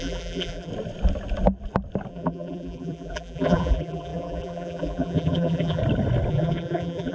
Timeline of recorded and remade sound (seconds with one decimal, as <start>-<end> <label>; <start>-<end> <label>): 0.0-0.7 remade; 0.7-2.1 recorded; 2.1-5.8 remade; 5.8-6.3 recorded; 6.3-7.1 remade